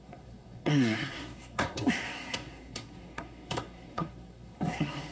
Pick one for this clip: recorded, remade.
remade